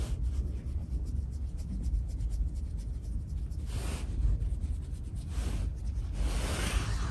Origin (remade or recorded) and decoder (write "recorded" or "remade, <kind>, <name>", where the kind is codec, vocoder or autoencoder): recorded